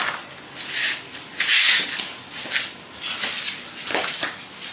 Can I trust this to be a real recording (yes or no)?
yes